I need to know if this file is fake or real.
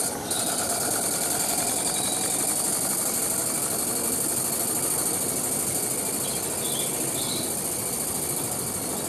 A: real